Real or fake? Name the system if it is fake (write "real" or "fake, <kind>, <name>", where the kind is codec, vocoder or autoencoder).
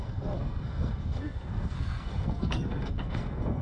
fake, codec, SNAC